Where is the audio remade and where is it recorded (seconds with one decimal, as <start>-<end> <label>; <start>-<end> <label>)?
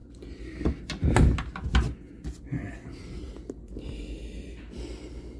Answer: 0.0-5.4 recorded